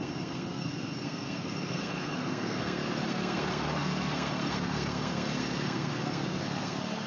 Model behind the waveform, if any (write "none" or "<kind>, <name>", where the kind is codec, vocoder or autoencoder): codec, SNAC